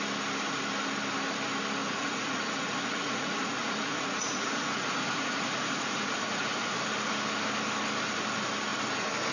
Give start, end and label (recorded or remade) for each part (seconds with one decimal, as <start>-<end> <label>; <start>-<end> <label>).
0.0-1.8 recorded; 1.8-6.8 remade; 6.8-9.3 recorded